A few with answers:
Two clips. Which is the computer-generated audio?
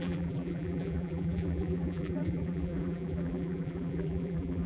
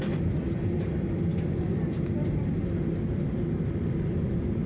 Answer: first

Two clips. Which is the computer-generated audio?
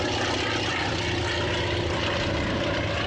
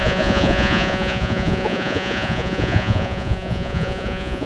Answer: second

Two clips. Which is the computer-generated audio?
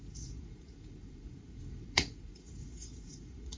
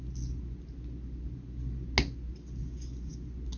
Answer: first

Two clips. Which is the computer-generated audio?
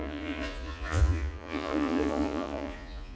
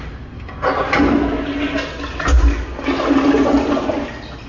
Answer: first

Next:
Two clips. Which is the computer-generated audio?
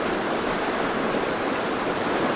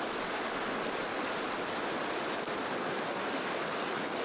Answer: first